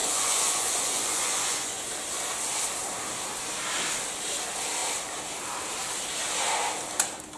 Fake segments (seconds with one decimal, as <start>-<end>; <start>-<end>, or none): 0.0-1.9